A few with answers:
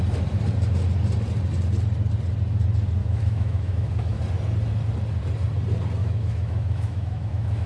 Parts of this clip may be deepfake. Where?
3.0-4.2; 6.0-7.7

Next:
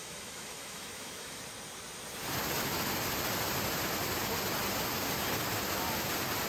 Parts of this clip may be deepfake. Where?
0.0-1.4

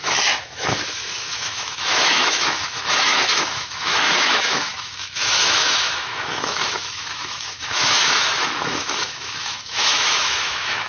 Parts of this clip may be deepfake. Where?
0.0-10.9

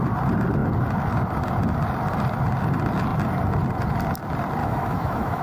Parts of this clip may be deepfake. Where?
4.6-5.4